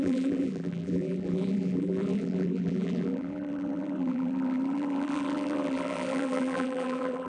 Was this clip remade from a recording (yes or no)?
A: yes